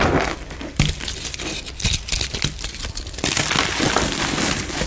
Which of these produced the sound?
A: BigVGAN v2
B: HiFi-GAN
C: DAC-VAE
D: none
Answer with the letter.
D